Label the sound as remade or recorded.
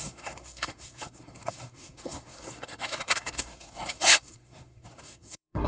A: remade